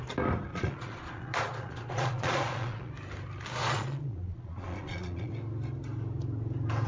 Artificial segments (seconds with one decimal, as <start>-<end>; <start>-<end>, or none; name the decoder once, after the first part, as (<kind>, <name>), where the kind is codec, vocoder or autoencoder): 0.5-2.9 (vocoder, Vocos); 3.6-5.3